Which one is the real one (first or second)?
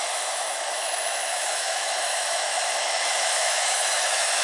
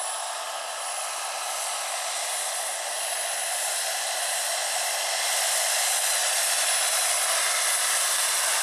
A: second